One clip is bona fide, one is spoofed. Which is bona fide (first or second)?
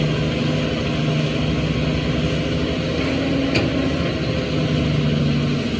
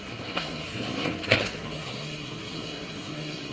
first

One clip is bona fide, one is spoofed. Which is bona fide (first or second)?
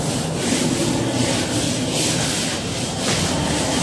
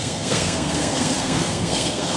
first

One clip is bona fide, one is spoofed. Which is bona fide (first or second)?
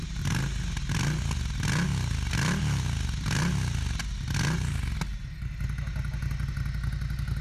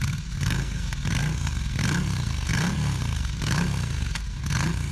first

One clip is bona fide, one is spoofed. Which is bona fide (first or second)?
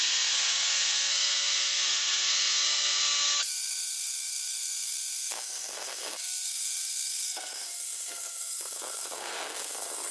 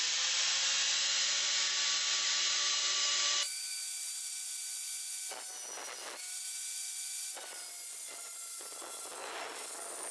second